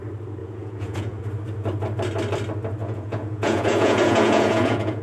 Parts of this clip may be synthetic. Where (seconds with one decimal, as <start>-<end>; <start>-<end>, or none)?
0.4-1.2; 2.8-5.0